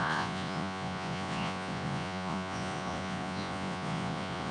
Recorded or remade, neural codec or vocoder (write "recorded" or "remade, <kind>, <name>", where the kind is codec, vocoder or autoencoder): remade, vocoder, Vocos